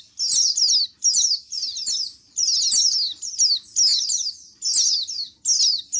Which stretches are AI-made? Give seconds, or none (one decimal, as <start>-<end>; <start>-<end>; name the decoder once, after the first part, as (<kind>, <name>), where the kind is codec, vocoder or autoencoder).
none